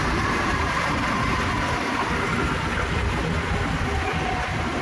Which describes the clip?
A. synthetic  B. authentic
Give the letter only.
B